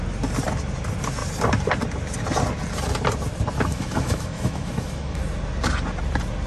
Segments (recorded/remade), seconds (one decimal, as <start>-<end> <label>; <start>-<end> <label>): 0.0-3.7 recorded; 3.7-5.2 remade; 5.2-6.5 recorded